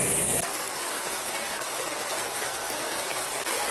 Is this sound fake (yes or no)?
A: yes